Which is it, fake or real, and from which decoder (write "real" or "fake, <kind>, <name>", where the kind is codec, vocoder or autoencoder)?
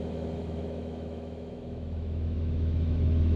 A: fake, autoencoder, DAC-VAE